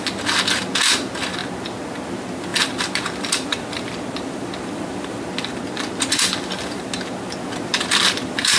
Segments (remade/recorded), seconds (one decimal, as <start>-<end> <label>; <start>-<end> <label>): 0.0-2.5 recorded; 2.5-6.1 remade; 6.1-7.7 recorded; 7.7-8.6 remade